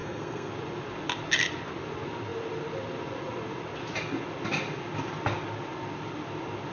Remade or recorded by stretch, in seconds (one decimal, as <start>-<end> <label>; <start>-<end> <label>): 0.0-0.5 remade; 0.5-6.7 recorded